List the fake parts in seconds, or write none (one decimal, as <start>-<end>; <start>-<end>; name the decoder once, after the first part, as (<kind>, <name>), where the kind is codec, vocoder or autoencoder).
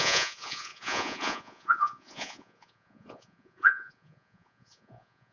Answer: 0.0-5.3 (vocoder, Vocos)